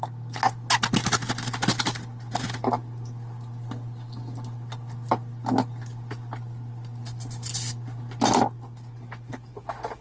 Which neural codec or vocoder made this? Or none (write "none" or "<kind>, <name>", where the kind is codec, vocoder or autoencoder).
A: none